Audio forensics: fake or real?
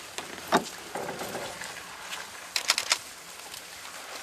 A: real